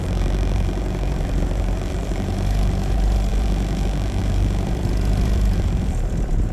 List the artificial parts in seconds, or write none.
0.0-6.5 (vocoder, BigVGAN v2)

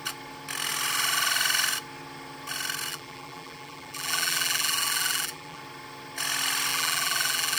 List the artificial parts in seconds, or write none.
2.9-5.6 (vocoder, BigVGAN v2); 6.7-7.6

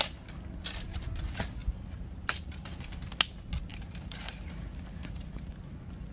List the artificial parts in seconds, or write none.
1.6-2.8 (vocoder, BigVGAN v2); 3.7-4.4